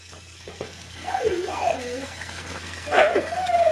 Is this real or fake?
fake